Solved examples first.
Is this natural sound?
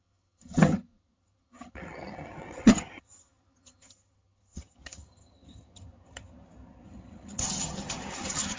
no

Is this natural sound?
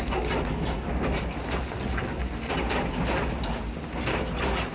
yes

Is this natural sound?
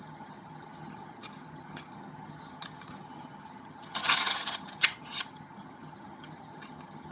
no